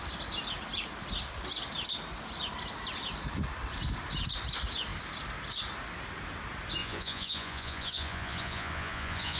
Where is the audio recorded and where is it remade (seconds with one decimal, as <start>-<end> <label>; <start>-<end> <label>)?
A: 0.0-6.8 recorded; 6.8-9.4 remade

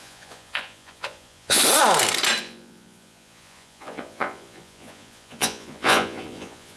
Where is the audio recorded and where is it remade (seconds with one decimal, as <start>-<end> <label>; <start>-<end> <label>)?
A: 0.0-1.6 remade; 1.6-2.4 recorded; 2.4-6.8 remade

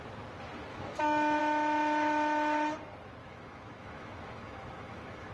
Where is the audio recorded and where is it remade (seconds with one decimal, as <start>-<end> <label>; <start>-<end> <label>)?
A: 0.0-0.7 recorded; 0.7-1.4 remade; 1.4-3.2 recorded; 3.2-5.3 remade

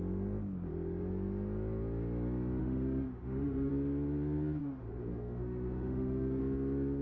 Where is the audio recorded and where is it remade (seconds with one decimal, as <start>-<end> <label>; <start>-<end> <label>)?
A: 0.0-2.6 recorded; 2.6-3.7 remade; 3.7-4.6 recorded; 4.6-6.4 remade; 6.4-7.0 recorded

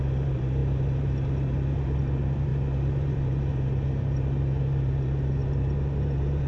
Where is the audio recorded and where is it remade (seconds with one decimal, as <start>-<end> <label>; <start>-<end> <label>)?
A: 0.0-6.5 remade

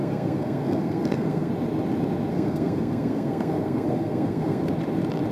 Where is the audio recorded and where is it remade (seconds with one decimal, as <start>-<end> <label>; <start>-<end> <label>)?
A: 0.0-1.5 remade; 1.5-2.3 recorded; 2.3-4.7 remade; 4.7-5.3 recorded